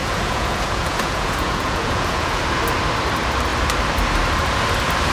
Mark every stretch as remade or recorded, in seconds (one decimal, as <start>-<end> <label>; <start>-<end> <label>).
0.0-2.4 remade; 2.4-5.1 recorded